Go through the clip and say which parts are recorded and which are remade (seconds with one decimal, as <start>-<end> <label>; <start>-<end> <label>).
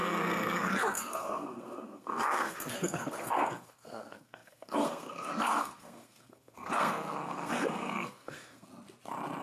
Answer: 0.0-8.7 remade; 8.7-9.4 recorded